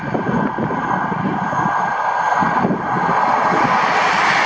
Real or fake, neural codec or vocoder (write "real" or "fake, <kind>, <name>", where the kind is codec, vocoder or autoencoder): real